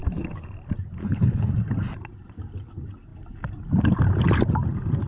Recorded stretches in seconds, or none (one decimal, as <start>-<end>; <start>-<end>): 0.0-1.0; 1.5-5.1